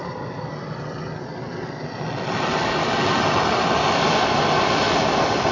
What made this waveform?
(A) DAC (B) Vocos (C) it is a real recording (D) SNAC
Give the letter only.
C